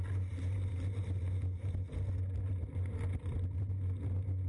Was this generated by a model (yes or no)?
no